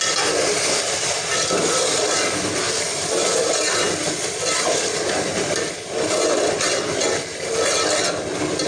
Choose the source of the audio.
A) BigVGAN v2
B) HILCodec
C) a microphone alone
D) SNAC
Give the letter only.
C